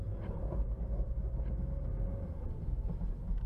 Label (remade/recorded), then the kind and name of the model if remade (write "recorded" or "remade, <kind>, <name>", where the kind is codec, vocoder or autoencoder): recorded